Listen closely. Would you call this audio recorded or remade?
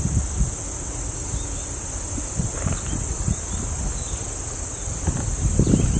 recorded